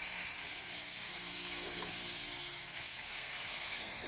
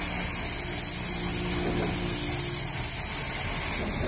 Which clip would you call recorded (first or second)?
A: second